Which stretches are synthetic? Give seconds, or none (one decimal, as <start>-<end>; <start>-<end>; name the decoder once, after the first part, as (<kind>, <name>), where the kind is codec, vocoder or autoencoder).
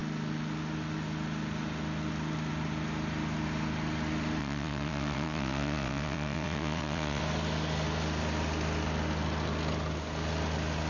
4.4-7.2 (vocoder, WaveNeXt)